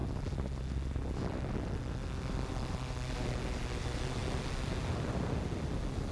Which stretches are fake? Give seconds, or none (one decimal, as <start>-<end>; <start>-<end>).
none